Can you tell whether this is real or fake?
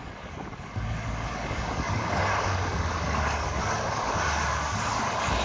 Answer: fake